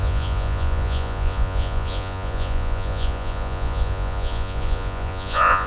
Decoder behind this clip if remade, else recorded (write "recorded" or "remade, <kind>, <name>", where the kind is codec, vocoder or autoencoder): remade, vocoder, Vocos